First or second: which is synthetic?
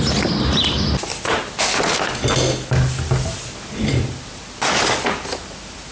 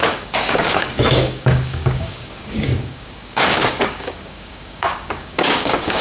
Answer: second